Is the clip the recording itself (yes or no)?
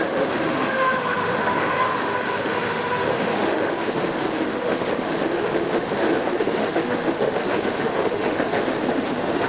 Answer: no